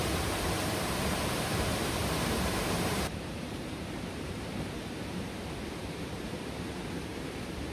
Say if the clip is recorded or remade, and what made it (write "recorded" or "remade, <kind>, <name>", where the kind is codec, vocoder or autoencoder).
remade, vocoder, BigVGAN v2